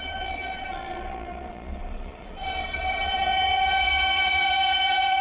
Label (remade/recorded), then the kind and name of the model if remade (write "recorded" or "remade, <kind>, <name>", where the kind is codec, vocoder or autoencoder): remade, vocoder, Vocos